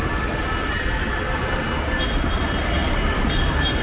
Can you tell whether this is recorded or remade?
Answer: recorded